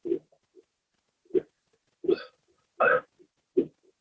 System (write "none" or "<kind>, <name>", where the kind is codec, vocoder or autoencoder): none